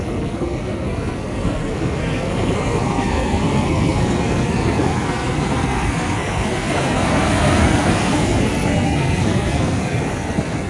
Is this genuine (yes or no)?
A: no